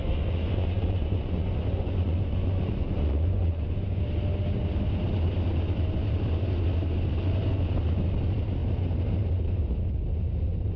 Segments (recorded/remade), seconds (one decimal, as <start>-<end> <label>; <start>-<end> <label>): 0.0-4.0 remade; 4.0-10.8 recorded